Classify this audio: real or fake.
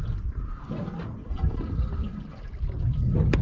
real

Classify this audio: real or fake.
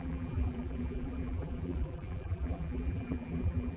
fake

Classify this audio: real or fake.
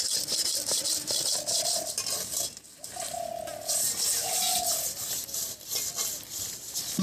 real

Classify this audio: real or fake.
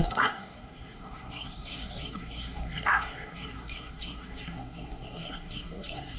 fake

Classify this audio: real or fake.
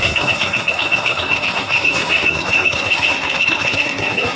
fake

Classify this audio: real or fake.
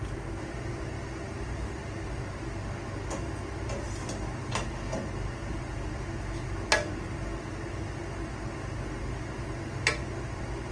real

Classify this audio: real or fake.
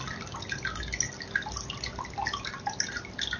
real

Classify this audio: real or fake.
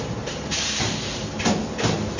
real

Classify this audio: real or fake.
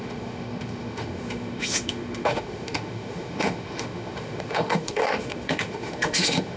fake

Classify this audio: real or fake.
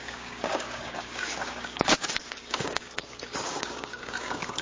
fake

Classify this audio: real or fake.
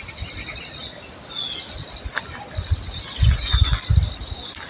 real